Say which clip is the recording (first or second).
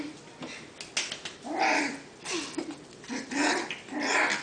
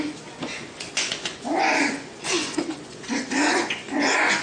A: first